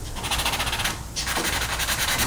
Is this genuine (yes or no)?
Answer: yes